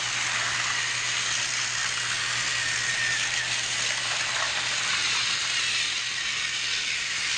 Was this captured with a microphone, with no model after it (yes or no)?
yes